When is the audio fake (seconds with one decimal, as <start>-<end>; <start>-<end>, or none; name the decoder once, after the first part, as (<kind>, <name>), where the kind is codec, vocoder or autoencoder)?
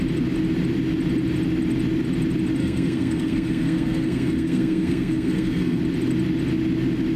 2.6-5.8 (codec, SNAC)